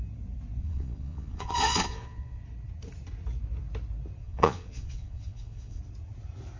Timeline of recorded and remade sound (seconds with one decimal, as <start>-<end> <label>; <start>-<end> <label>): 0.0-0.6 recorded; 0.6-2.4 remade; 2.4-4.2 recorded; 4.2-5.8 remade; 5.8-6.6 recorded